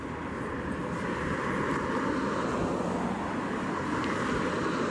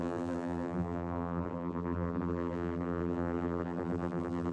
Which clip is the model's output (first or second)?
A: second